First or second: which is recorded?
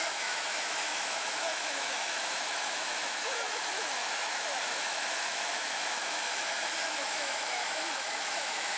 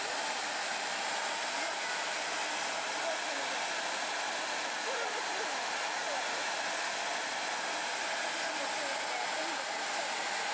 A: second